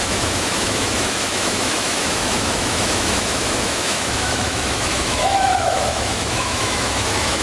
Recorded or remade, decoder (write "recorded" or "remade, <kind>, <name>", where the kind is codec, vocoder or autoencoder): remade, autoencoder, DAC-VAE